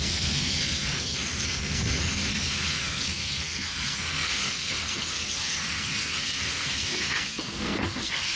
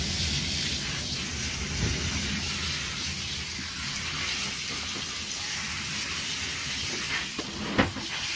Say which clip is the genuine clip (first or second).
second